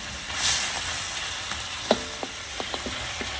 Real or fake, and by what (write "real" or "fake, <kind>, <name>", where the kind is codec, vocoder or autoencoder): real